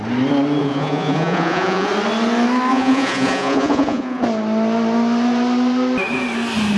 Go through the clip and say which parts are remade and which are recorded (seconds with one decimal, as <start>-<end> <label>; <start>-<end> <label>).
0.0-0.6 recorded; 0.6-1.9 remade; 1.9-2.7 recorded; 2.7-4.2 remade; 4.2-6.8 recorded